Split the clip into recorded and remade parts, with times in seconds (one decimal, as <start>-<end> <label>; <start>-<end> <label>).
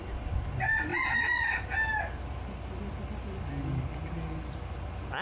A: 0.0-5.2 recorded